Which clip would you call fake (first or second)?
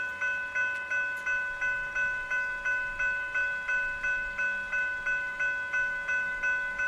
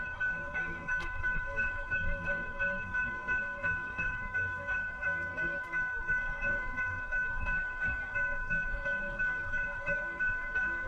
second